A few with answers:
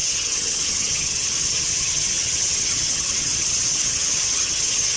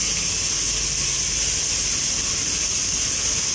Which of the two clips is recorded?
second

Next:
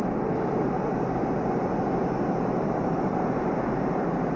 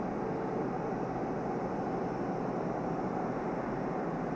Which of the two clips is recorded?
second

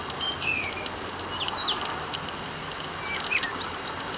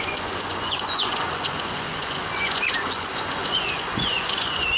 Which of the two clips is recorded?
first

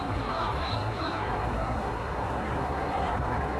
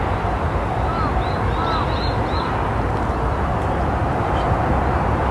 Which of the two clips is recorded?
second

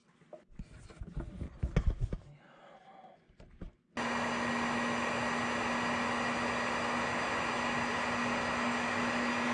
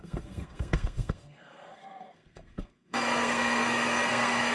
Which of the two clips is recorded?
first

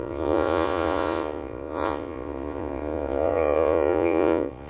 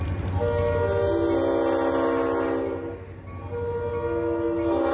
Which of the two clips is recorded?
second